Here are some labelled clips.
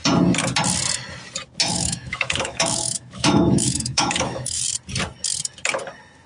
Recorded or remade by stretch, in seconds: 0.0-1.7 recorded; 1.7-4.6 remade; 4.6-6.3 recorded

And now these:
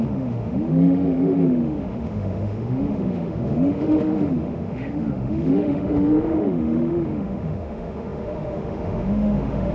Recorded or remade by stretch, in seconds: 0.0-9.7 remade

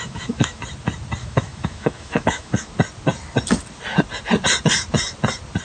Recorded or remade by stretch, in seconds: 0.0-0.6 remade; 0.6-1.2 recorded; 1.2-2.7 remade; 2.7-5.6 recorded